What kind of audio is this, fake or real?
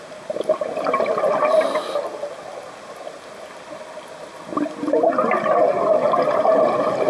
real